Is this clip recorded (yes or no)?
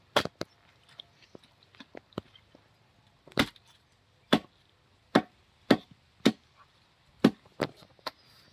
yes